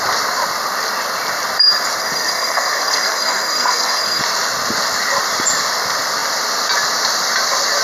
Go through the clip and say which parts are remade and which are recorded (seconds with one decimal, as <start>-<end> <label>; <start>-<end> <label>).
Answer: 0.0-2.0 recorded; 2.0-4.2 remade; 4.2-7.8 recorded

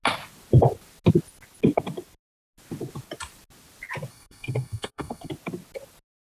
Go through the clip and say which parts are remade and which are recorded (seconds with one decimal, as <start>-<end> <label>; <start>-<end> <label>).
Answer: 0.0-4.1 recorded; 4.1-5.3 remade; 5.3-6.2 recorded

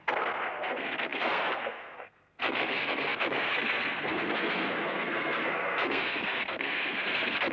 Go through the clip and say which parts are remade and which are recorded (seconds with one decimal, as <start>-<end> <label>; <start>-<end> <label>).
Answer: 0.0-7.5 remade

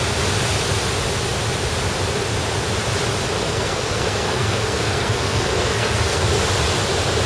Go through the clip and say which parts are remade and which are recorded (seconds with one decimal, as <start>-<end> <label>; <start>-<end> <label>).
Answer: 0.0-3.4 recorded; 3.4-6.3 remade; 6.3-7.3 recorded